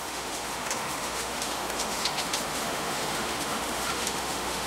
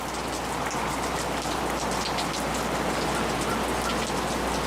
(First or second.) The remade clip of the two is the first